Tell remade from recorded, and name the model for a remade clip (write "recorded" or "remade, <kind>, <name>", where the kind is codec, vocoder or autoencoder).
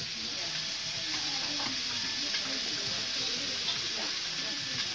recorded